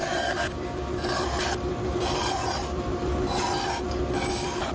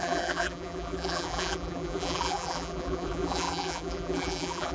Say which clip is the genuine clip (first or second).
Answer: first